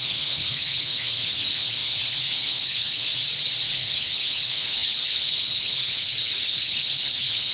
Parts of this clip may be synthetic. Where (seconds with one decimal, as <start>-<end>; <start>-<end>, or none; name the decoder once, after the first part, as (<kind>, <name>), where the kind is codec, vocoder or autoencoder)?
0.0-3.1 (codec, HILCodec); 3.7-7.5